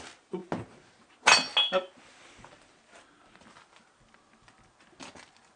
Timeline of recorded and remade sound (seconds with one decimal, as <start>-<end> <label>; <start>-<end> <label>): 0.0-5.6 recorded